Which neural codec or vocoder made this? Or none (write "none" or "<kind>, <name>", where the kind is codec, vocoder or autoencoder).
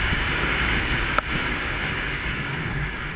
codec, DAC